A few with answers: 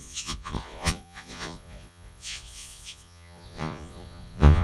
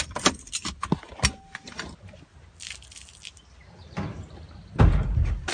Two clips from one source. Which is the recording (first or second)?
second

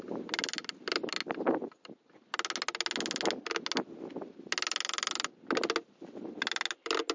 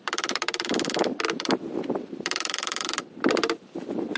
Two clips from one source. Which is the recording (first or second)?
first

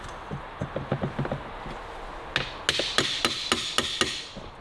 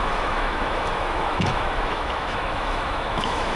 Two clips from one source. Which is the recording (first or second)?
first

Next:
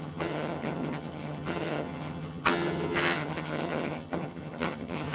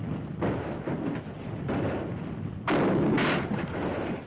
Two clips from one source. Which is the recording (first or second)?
second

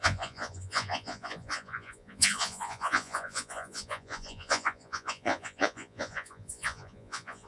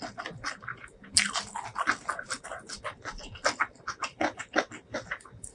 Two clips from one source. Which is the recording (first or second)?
second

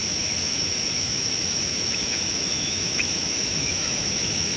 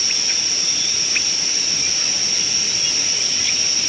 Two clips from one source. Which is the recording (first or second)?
second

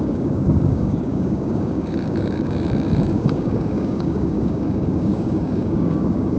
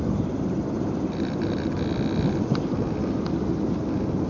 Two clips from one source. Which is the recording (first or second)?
second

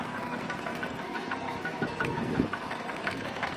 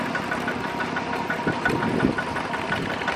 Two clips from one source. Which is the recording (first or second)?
second